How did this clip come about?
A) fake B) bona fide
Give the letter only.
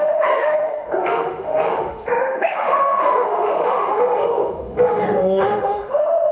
A